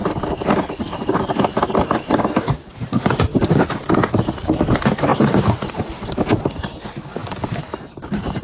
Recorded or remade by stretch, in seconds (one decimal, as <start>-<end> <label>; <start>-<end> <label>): 0.0-0.8 recorded; 0.8-3.3 remade; 3.3-3.9 recorded; 3.9-8.4 remade